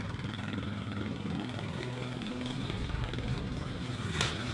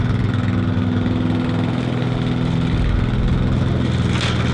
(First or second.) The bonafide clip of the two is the second